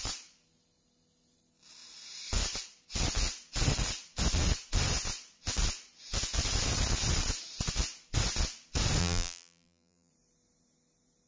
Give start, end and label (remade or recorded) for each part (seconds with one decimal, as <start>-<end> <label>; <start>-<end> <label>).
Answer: 0.0-9.0 recorded; 9.0-10.1 remade; 10.1-11.3 recorded